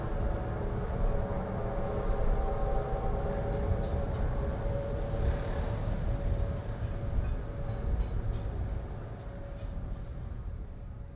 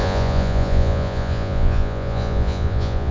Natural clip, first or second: first